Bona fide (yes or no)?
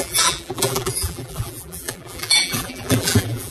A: no